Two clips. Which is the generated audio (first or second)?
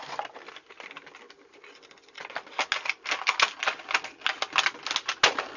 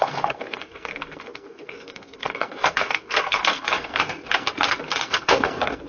second